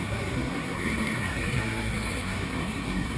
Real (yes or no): no